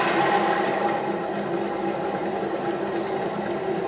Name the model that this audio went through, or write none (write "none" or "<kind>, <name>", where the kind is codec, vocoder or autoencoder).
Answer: none